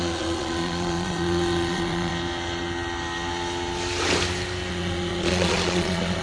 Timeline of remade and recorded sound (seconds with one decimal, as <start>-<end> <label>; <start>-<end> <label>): 0.0-2.1 remade; 2.1-4.7 recorded; 4.7-6.2 remade